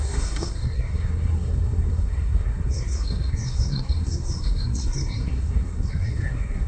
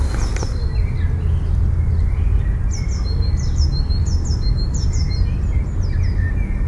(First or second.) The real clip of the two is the second